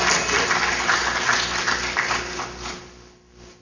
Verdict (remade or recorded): recorded